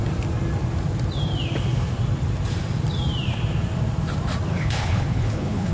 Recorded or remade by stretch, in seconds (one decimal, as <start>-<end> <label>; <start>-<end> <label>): 0.0-4.5 recorded; 4.5-5.7 remade